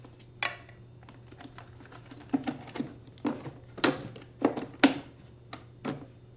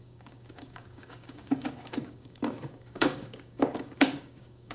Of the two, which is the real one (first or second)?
first